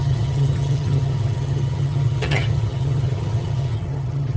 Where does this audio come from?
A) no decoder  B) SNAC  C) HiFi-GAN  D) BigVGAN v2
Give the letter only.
C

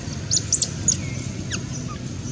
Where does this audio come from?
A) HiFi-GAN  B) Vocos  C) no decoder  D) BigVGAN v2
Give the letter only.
C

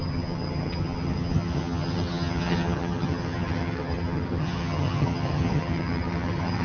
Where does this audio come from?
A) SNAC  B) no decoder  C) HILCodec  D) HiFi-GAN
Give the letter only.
D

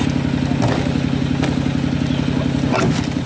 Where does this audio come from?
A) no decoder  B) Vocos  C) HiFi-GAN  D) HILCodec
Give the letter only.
A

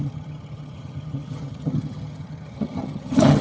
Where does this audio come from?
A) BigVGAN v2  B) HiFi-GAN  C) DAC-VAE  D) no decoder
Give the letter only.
B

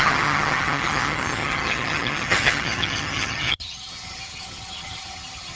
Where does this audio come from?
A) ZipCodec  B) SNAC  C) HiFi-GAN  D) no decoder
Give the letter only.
C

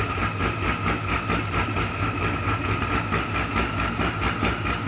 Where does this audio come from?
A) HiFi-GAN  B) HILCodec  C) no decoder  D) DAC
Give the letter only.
C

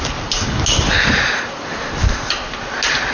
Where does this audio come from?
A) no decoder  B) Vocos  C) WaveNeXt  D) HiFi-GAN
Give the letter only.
A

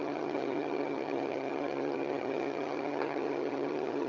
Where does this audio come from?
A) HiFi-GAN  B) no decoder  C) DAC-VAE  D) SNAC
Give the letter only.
A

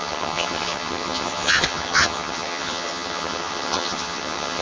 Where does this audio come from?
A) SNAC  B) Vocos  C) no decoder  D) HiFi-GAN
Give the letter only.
D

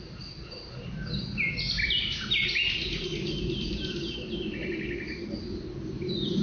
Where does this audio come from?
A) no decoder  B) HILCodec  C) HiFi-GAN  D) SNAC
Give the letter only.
A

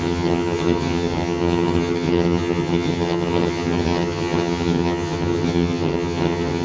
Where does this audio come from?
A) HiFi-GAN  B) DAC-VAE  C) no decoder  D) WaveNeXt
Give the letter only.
A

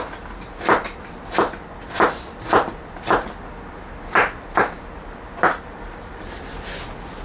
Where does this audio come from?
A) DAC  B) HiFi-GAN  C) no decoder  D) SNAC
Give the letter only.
C